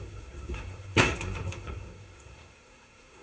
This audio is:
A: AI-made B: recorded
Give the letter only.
A